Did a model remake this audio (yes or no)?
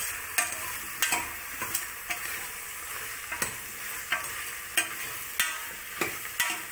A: no